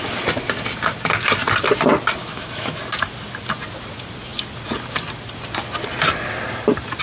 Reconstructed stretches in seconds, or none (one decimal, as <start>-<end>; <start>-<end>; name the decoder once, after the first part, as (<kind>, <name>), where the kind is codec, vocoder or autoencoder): 2.2-2.8 (autoencoder, DAC-VAE)